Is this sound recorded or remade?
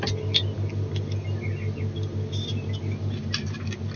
recorded